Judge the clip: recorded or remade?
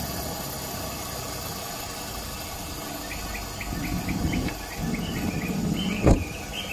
recorded